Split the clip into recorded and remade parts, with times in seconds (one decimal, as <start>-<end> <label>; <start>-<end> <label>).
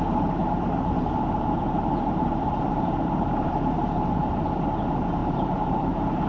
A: 0.0-0.4 recorded; 0.4-4.2 remade; 4.2-5.2 recorded; 5.2-6.3 remade